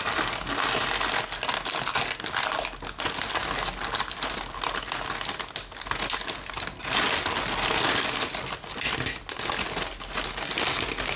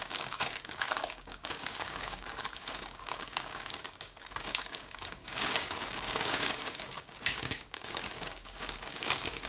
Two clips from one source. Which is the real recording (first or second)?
first